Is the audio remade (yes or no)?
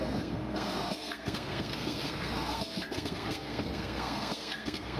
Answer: yes